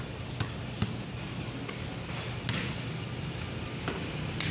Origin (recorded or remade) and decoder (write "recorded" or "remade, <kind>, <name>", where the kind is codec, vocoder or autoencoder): recorded